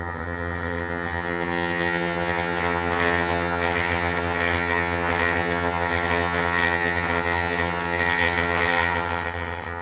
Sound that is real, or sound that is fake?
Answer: fake